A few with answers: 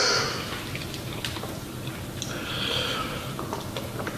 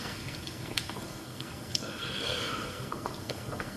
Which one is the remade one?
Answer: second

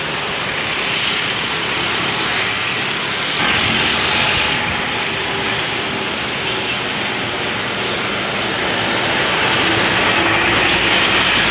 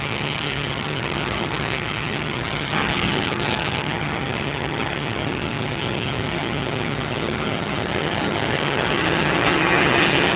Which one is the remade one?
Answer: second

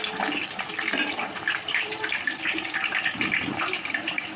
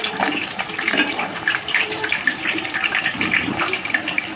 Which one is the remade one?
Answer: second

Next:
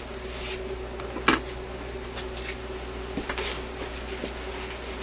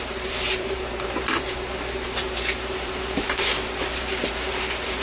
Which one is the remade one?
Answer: second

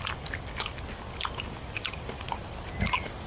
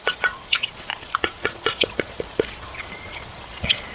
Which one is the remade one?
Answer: second